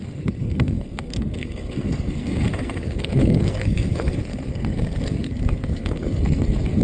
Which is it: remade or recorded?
remade